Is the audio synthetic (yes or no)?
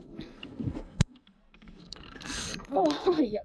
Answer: yes